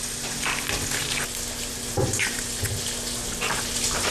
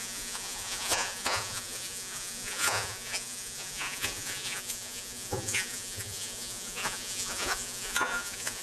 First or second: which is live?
first